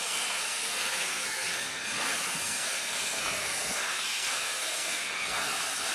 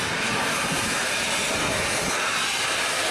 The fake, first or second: first